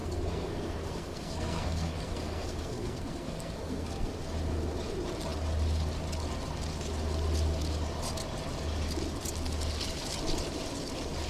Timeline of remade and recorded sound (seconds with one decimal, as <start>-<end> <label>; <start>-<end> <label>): 0.0-4.1 remade; 4.1-11.3 recorded